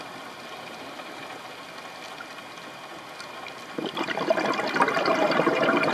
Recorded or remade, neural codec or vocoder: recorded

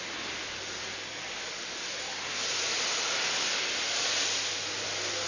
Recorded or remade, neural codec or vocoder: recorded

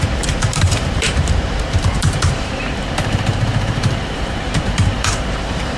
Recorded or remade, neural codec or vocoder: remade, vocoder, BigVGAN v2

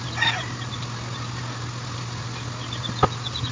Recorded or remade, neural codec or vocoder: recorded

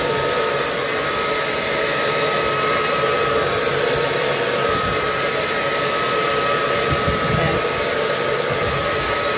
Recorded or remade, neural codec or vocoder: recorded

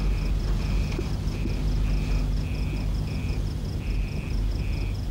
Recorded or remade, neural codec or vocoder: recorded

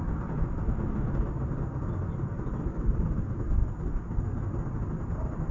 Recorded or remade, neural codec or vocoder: recorded